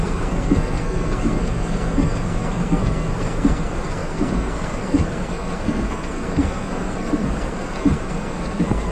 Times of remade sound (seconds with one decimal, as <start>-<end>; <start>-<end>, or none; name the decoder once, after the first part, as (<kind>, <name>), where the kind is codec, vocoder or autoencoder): 0.0-8.9 (codec, SNAC)